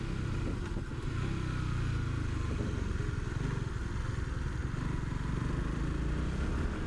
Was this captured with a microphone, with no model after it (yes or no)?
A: yes